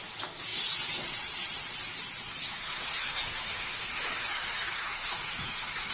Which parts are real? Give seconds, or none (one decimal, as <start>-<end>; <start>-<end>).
0.0-2.4